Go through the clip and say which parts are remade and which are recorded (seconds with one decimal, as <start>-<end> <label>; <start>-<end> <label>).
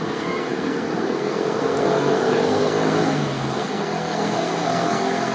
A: 0.0-5.3 remade